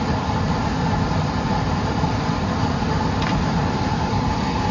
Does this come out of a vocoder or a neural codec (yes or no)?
no